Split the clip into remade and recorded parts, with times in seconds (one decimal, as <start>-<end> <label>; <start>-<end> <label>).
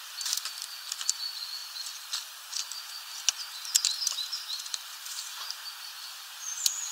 0.0-6.9 recorded